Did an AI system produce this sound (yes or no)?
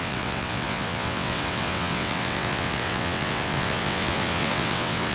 yes